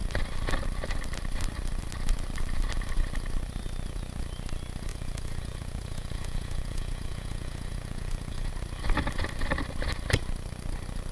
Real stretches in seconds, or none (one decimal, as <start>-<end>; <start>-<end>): 0.0-4.9; 8.5-11.1